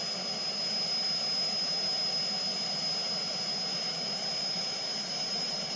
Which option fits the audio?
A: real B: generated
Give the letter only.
A